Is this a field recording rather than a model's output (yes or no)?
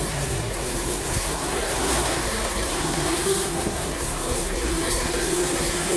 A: no